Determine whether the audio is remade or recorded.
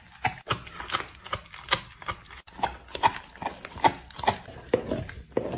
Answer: recorded